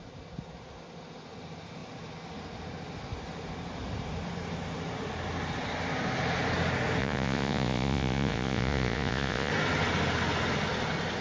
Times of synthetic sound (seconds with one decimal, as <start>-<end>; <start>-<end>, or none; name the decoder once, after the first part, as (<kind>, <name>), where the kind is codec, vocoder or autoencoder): 7.0-9.5 (vocoder, Vocos)